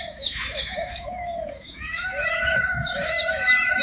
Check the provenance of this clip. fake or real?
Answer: fake